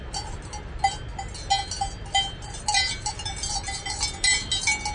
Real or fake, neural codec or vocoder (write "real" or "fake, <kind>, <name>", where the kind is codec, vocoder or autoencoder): real